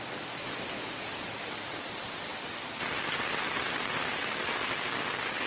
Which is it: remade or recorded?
recorded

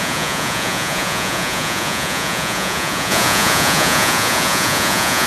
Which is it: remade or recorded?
remade